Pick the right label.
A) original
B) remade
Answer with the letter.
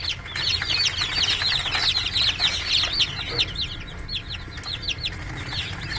A